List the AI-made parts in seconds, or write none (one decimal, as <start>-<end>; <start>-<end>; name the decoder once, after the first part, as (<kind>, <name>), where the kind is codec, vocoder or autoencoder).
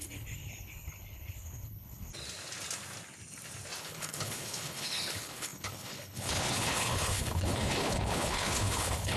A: 0.0-2.1 (codec, HILCodec); 3.8-9.2